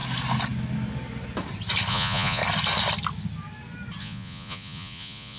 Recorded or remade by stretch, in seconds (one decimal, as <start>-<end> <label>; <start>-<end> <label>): 0.0-1.9 recorded; 1.9-2.4 remade; 2.4-4.0 recorded; 4.0-5.4 remade